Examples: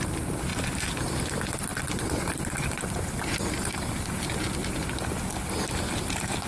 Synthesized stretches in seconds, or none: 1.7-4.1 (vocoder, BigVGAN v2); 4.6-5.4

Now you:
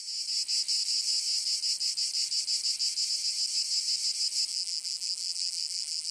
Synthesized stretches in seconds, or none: 4.5-6.1 (vocoder, BigVGAN v2)